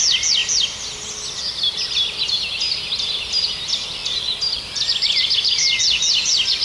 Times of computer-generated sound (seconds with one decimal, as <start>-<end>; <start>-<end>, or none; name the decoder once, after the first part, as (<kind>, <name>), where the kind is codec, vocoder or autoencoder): none